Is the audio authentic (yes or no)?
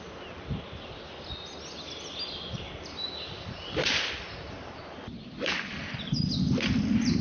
yes